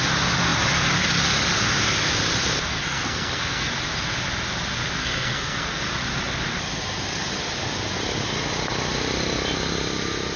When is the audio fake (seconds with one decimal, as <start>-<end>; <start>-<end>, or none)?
2.7-3.7; 5.0-5.8